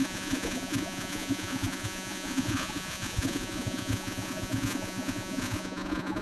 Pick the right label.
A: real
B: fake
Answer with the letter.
B